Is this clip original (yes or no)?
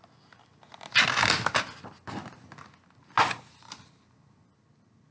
yes